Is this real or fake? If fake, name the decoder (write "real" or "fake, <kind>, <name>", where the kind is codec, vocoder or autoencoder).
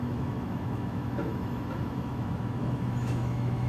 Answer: fake, autoencoder, DAC-VAE